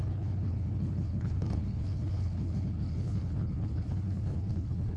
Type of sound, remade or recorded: remade